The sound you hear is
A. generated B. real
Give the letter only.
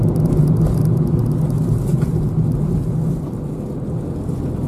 B